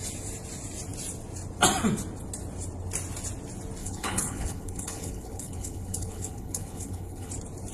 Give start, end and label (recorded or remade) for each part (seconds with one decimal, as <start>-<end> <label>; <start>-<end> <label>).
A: 0.0-3.8 recorded; 3.8-7.3 remade; 7.3-7.7 recorded